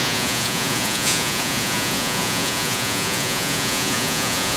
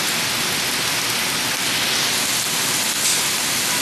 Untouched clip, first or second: second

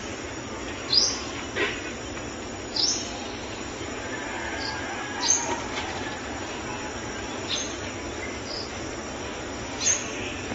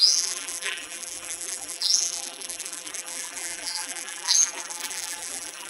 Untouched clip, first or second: first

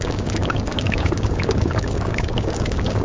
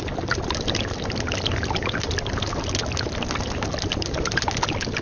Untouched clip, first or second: second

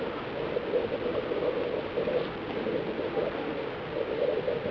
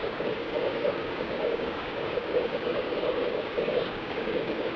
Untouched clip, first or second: first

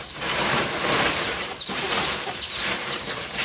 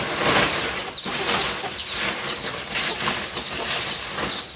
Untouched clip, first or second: second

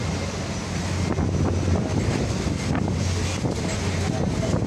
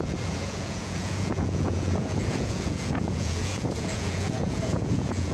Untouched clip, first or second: first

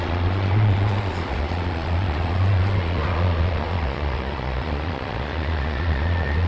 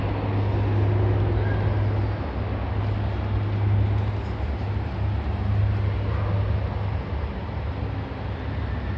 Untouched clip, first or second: second